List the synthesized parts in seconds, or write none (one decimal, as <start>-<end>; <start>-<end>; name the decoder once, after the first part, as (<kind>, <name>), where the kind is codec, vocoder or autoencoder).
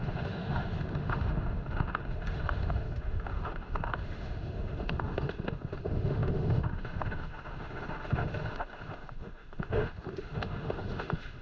0.0-11.4 (autoencoder, DAC-VAE)